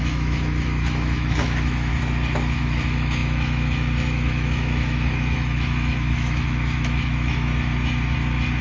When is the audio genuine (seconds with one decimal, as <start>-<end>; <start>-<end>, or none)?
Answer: 1.9-2.6; 7.5-8.6